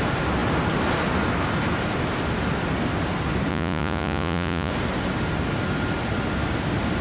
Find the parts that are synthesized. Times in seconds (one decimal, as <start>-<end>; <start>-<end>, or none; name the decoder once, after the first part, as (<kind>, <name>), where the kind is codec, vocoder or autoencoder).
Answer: 3.5-4.7 (vocoder, Vocos)